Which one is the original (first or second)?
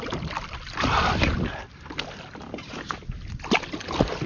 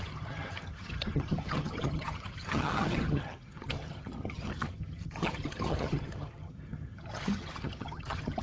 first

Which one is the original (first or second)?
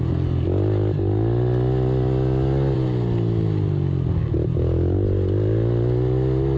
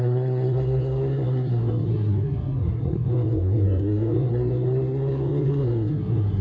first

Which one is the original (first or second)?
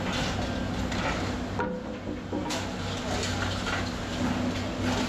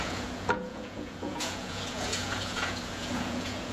first